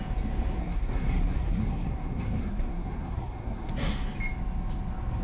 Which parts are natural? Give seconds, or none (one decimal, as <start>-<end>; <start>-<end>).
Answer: 0.0-0.6; 3.7-5.2